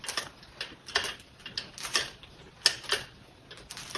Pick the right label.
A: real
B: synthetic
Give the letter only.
A